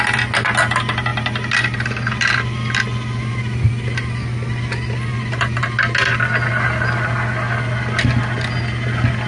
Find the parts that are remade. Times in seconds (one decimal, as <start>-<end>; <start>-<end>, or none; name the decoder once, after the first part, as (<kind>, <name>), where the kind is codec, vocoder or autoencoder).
1.1-6.2 (vocoder, BigVGAN v2)